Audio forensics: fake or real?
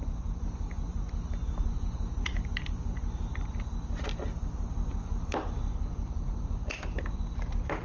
real